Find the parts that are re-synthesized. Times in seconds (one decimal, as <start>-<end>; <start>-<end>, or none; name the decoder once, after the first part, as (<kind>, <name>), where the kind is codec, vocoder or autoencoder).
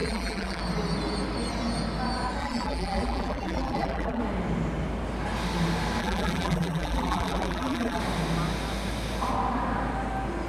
0.0-0.6 (vocoder, BigVGAN v2); 2.4-4.2; 6.0-8.0